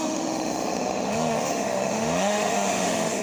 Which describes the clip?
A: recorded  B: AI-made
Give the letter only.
B